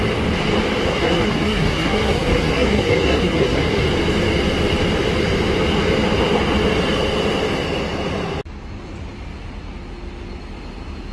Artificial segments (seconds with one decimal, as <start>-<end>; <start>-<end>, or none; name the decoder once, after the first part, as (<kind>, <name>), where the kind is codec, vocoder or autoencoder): 0.9-3.9 (codec, SNAC)